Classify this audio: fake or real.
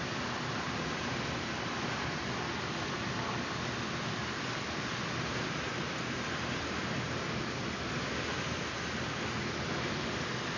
fake